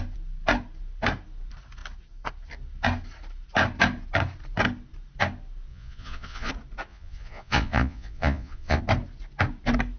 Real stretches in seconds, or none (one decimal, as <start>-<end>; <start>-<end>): 0.0-5.7; 6.5-6.9; 8.8-10.0